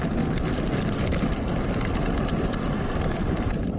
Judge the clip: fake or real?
real